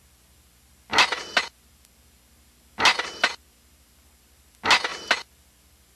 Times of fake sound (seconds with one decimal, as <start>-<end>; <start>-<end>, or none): none